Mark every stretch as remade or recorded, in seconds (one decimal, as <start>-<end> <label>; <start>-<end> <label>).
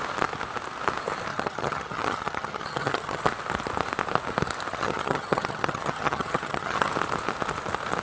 0.0-1.3 recorded; 1.3-3.2 remade; 3.2-4.7 recorded; 4.7-6.9 remade; 6.9-8.0 recorded